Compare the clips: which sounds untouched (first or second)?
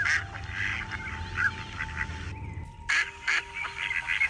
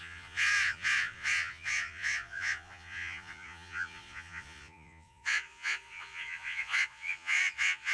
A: first